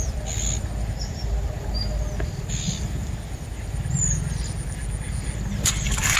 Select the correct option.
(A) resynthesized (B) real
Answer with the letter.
B